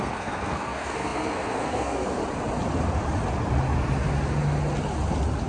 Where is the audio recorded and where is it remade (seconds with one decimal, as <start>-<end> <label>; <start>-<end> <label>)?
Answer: 0.0-2.2 remade; 2.2-5.5 recorded